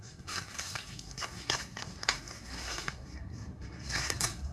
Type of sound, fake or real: fake